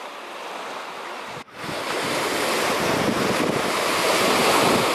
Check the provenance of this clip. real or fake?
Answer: real